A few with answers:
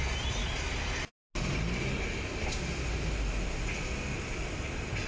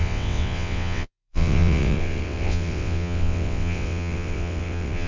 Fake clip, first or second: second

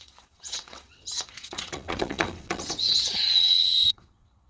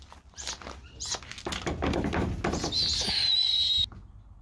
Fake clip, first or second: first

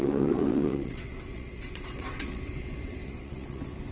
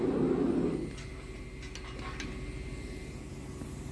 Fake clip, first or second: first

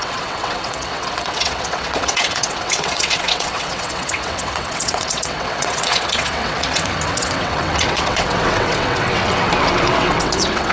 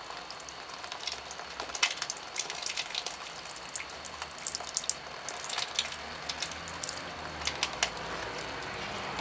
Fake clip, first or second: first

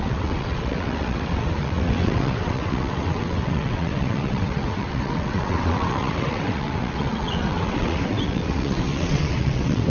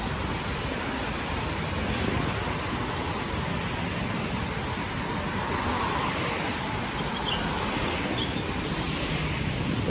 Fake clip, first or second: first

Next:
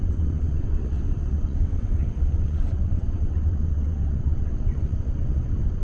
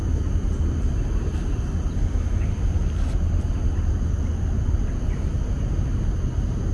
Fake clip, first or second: first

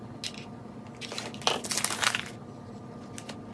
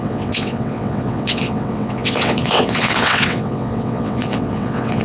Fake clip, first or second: second